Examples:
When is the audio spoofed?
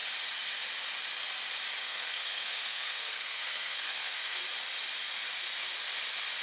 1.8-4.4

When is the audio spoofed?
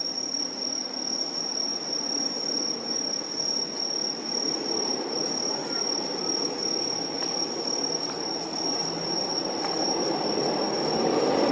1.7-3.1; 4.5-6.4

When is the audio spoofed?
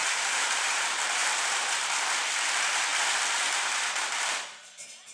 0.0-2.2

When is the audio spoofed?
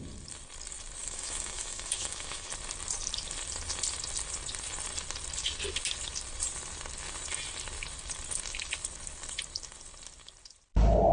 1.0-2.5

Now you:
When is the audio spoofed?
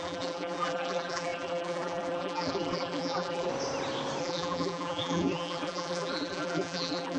0.0-3.5; 4.2-7.2